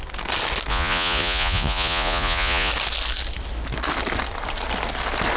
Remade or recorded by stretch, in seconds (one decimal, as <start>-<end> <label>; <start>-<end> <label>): 0.0-0.7 recorded; 0.7-2.7 remade; 2.7-5.4 recorded